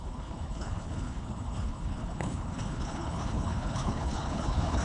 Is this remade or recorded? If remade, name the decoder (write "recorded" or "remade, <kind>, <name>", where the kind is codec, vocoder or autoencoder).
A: remade, codec, HILCodec